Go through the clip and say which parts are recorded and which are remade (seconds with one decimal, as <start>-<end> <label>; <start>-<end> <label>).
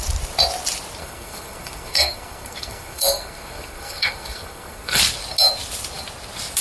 0.0-1.0 recorded; 1.0-5.0 remade; 5.0-6.6 recorded